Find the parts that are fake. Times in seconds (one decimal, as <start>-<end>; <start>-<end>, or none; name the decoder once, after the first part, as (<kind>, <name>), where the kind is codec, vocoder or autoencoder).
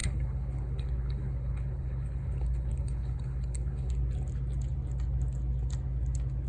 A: 0.0-3.9 (codec, HILCodec)